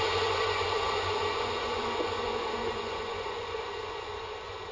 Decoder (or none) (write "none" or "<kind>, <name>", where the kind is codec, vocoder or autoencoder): vocoder, Vocos